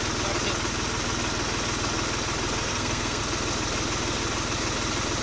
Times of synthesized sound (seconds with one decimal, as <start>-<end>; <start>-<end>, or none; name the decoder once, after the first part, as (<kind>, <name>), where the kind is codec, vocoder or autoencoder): 2.7-3.2 (codec, SNAC)